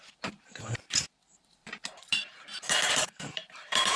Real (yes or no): no